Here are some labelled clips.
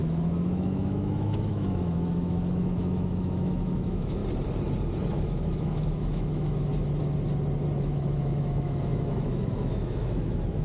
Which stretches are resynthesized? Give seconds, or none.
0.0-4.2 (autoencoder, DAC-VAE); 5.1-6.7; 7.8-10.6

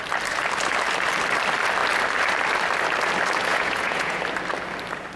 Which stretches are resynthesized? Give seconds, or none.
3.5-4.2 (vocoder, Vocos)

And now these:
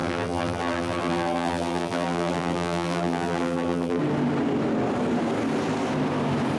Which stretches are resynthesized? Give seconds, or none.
0.0-4.0 (vocoder, BigVGAN v2)

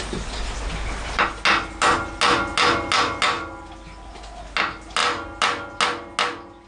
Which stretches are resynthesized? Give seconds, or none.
none

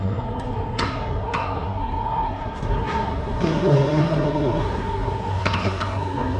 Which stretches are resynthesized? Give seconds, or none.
0.0-6.4 (codec, SNAC)

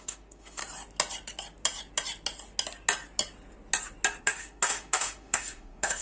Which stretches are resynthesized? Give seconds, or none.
0.0-0.6 (autoencoder, DAC-VAE); 4.2-6.0

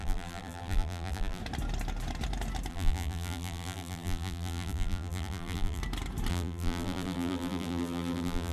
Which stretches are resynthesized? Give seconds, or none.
0.0-1.4 (vocoder, BigVGAN v2); 2.7-5.8; 6.3-8.5